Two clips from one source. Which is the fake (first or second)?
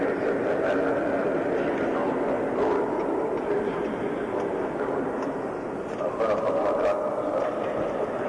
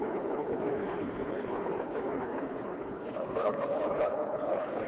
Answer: second